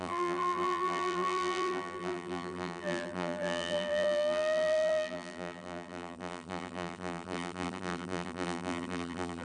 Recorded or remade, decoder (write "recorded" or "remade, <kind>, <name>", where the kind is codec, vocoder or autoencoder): remade, vocoder, BigVGAN v2